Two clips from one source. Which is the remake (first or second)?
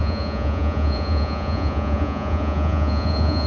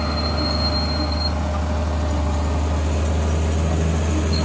first